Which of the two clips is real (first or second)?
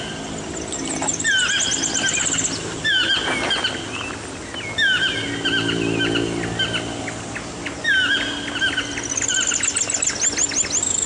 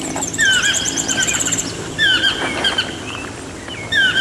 first